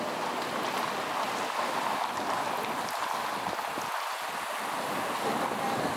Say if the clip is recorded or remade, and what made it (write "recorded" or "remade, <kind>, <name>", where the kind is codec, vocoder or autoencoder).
recorded